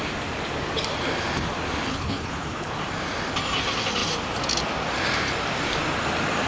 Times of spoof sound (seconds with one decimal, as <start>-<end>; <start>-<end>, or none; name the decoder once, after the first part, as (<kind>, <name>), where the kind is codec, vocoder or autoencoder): 1.9-2.7 (codec, HILCodec)

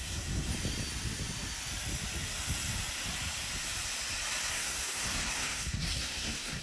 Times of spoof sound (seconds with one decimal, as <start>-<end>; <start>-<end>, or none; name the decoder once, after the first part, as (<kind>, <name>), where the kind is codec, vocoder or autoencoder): 0.0-0.5 (codec, SNAC); 4.5-6.6